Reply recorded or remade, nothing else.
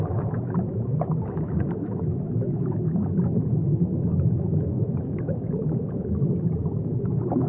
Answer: remade